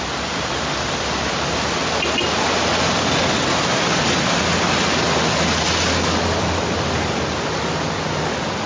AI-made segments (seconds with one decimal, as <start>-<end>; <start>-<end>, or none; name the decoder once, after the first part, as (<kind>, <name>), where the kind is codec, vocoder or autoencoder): none